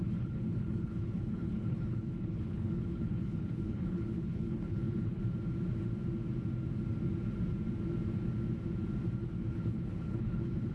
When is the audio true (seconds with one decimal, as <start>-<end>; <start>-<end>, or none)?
5.2-9.2